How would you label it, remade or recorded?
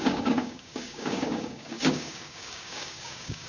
remade